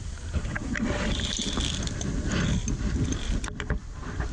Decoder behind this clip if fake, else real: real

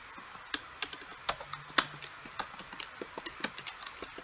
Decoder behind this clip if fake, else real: real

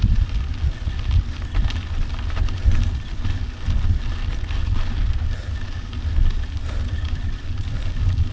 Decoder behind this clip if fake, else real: real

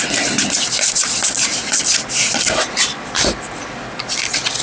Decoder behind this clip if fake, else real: real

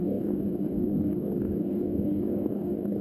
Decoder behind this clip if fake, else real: fake, codec, DAC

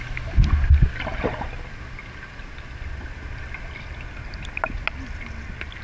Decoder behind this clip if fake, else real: real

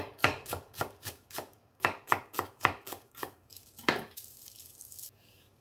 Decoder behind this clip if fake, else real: fake, codec, DAC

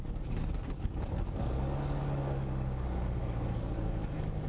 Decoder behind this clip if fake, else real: fake, codec, DAC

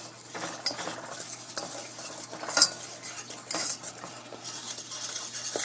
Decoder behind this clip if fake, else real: real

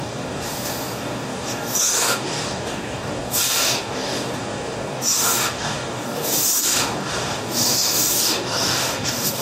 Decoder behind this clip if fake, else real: fake, codec, DAC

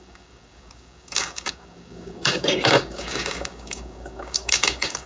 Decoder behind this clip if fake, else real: fake, codec, DAC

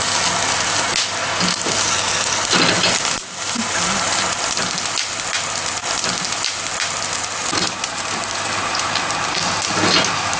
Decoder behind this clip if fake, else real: real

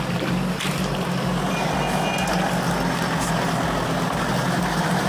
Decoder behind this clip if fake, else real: real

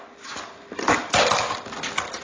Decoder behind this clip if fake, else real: real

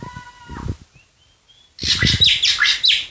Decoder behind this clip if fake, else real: real